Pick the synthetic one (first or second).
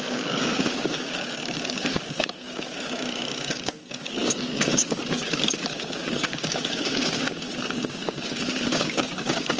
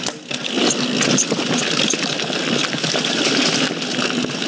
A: first